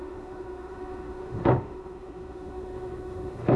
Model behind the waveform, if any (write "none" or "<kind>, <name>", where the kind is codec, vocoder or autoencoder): autoencoder, DAC-VAE